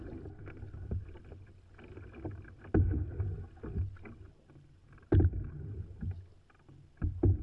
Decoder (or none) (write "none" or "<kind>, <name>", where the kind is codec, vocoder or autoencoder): none